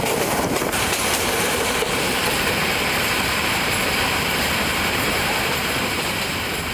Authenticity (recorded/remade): remade